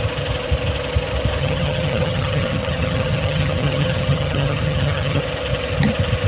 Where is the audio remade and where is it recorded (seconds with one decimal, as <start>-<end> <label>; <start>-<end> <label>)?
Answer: 0.0-1.4 recorded; 1.4-5.2 remade; 5.2-6.3 recorded